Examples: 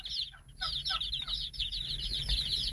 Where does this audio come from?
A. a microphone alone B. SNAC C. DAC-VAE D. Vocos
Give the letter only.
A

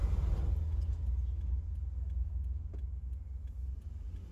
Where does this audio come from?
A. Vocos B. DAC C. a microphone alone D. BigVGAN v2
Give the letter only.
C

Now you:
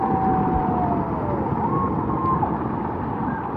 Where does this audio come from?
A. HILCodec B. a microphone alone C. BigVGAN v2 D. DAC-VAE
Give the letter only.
B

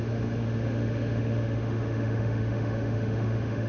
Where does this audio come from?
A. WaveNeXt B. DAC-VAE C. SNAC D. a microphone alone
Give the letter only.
B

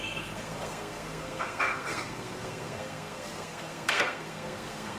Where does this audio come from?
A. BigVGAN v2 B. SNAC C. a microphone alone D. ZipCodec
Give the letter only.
B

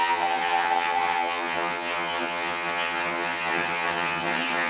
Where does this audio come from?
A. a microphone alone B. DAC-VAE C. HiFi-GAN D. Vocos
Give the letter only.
C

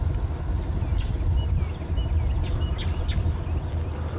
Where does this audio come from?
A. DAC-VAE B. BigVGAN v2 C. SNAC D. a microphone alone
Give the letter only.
D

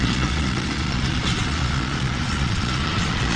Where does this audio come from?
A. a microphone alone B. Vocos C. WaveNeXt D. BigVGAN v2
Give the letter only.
B